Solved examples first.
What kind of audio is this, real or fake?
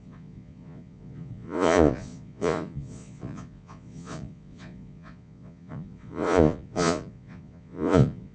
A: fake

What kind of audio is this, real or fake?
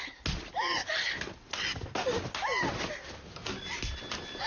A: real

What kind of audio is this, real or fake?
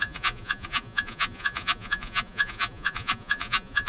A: fake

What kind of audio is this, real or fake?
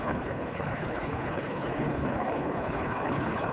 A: fake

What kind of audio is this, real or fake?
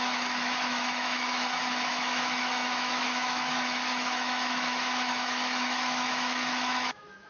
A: fake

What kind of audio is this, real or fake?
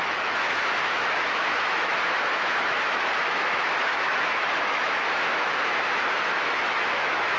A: fake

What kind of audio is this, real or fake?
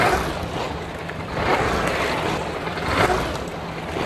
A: real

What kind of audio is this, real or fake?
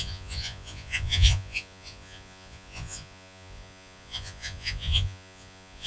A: fake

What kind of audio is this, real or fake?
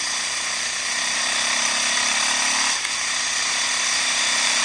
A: fake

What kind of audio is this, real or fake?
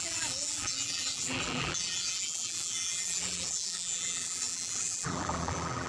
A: fake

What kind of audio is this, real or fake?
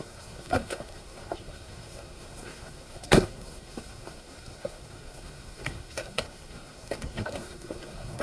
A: fake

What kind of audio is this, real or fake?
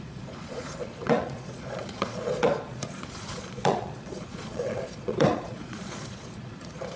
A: fake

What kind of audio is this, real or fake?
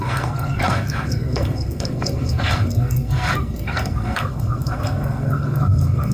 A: fake